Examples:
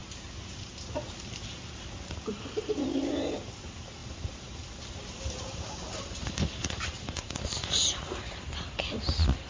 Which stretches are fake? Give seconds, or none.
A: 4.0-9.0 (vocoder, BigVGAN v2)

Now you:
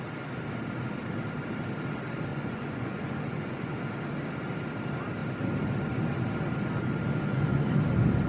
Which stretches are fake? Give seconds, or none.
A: 2.3-3.7 (vocoder, Vocos); 7.3-7.8

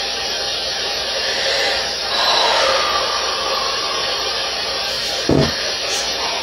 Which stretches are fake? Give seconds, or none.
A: none